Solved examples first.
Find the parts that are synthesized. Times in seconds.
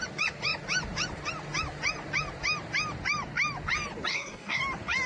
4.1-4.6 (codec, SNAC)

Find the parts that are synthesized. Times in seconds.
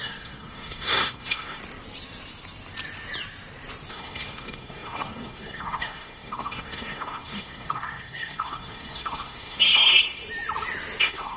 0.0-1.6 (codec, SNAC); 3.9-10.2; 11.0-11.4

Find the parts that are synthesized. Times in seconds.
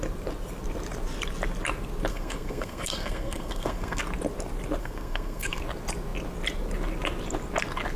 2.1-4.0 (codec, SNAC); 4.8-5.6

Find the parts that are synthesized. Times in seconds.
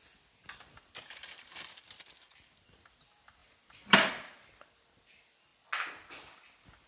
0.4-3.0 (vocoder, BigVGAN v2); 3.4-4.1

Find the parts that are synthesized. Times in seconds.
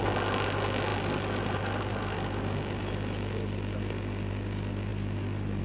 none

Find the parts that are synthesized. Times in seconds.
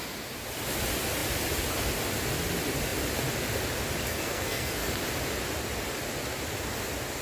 4.1-4.9 (codec, SNAC)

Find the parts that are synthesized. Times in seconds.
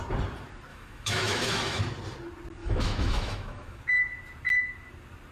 0.7-1.8 (autoencoder, DAC-VAE); 2.6-3.8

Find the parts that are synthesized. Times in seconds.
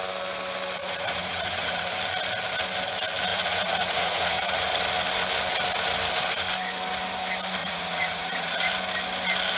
0.8-1.9 (vocoder, Vocos); 3.3-4.5; 7.6-8.7